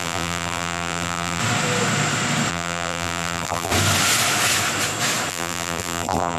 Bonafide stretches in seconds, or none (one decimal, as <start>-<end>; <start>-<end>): 1.4-2.5; 3.7-5.3